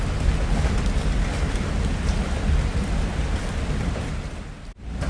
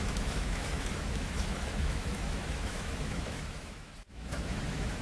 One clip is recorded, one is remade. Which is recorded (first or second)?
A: first